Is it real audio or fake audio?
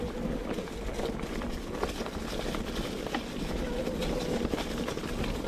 real